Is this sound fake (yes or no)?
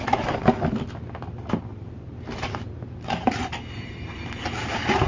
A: no